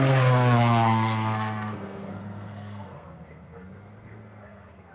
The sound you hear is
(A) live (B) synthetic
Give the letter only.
B